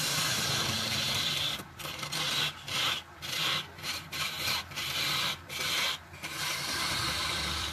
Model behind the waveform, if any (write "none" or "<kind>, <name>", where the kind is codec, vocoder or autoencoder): vocoder, BigVGAN v2